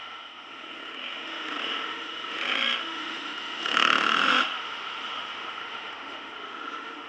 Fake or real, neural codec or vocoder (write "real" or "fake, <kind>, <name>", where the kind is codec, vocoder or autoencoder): fake, autoencoder, DAC-VAE